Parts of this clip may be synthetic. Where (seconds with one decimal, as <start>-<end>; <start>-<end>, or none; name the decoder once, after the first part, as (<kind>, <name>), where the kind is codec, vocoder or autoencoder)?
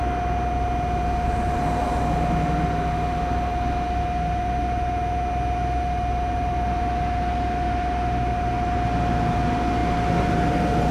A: none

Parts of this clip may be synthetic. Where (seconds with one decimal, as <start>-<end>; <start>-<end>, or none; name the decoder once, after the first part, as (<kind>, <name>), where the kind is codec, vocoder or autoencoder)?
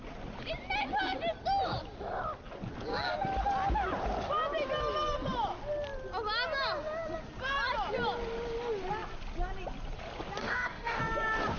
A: 10.4-11.0 (codec, DAC)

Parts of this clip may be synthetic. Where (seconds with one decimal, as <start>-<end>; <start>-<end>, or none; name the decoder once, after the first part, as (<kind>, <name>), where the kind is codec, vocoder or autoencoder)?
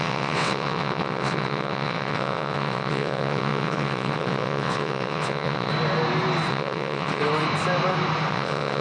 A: 0.0-5.7 (vocoder, WaveNeXt); 6.5-7.2; 8.3-8.8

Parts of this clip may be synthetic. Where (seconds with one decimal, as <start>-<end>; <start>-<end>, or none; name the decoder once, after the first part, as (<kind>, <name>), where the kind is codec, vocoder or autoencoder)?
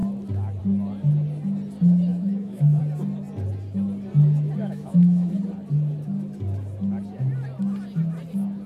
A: 2.1-2.8 (autoencoder, DAC-VAE); 4.6-5.3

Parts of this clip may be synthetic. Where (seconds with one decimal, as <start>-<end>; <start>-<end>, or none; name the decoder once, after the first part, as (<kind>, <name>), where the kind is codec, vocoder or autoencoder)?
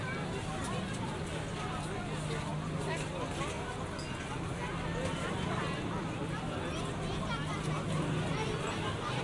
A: none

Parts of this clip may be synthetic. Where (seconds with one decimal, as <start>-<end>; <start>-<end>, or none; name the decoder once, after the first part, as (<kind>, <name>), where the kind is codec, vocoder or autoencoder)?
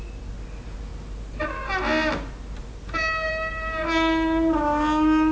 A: none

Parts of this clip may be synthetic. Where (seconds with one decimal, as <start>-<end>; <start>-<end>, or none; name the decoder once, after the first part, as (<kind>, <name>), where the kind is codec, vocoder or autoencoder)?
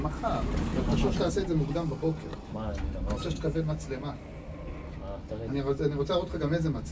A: none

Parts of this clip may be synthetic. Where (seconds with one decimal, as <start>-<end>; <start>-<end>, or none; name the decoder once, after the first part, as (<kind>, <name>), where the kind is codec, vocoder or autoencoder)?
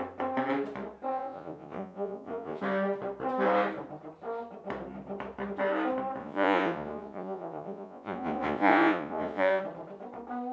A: 1.1-2.6 (vocoder, Vocos); 6.2-9.6